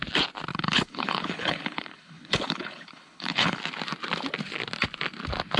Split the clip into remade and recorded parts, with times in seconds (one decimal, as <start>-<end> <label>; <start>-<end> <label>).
0.0-0.5 recorded; 0.5-3.6 remade; 3.6-5.6 recorded